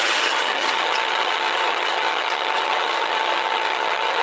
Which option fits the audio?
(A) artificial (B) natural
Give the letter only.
A